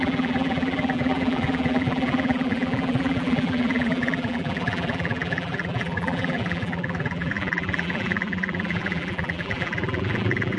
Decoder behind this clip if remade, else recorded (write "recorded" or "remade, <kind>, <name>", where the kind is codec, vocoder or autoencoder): remade, vocoder, BigVGAN v2